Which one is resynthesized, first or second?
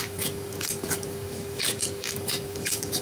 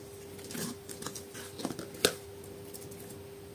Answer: first